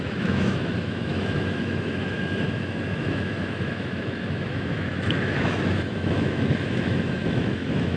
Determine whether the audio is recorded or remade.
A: remade